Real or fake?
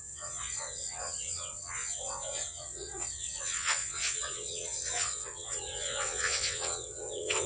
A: fake